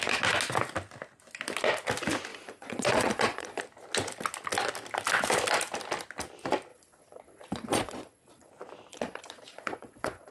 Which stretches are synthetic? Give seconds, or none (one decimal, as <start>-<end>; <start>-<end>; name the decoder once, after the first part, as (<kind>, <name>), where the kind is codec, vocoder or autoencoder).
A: 2.3-3.6 (vocoder, Vocos); 6.7-8.5; 8.9-10.3